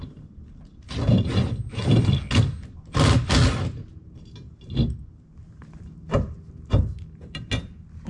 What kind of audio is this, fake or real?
real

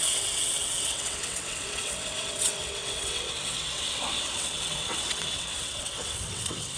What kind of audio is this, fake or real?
fake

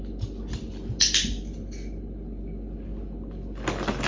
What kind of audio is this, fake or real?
real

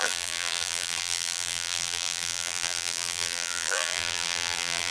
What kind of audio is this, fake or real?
fake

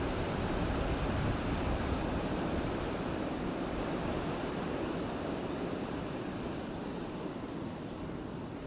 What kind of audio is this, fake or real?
fake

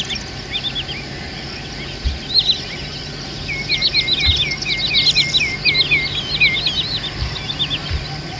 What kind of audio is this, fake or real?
real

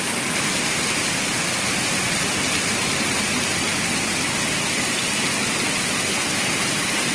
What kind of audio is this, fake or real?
fake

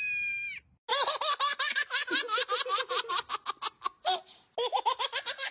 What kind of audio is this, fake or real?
real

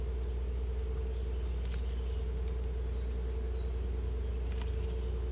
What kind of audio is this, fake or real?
real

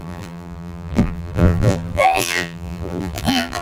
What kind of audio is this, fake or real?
fake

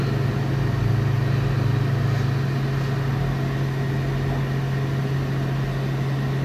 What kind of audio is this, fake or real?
real